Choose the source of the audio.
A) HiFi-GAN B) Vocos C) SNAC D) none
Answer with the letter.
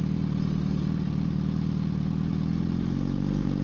D